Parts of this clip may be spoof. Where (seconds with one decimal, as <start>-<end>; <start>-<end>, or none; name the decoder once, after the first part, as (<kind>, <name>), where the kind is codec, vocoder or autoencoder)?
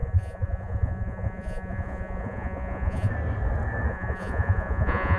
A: 0.0-3.1 (vocoder, Vocos); 3.9-5.2